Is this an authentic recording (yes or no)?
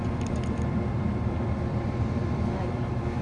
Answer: no